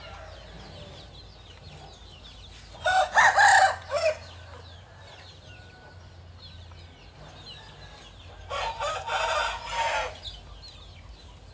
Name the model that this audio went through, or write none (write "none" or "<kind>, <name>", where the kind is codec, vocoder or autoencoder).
none